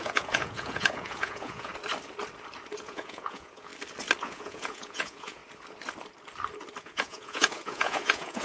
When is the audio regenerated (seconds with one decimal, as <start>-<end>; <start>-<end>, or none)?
0.0-1.7; 2.8-3.7; 4.2-5.4; 6.8-8.4